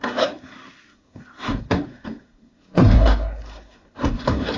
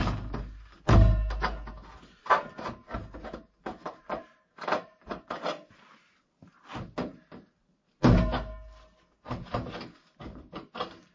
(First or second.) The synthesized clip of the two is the first